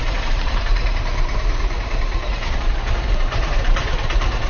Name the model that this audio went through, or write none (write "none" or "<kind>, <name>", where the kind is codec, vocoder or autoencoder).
vocoder, BigVGAN v2